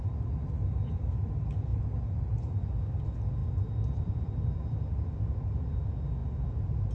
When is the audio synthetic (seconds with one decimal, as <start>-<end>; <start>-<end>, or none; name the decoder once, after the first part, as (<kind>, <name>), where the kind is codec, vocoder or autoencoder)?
none